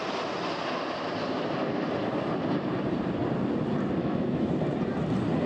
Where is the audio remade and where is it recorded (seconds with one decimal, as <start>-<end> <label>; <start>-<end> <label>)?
0.0-4.0 recorded; 4.0-4.5 remade; 4.5-5.5 recorded